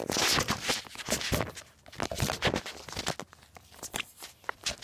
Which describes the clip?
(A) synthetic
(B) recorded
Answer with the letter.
B